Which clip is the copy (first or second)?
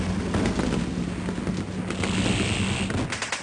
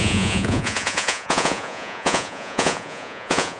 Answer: second